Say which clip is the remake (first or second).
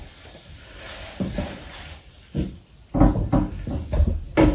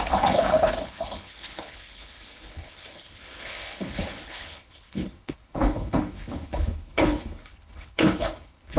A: second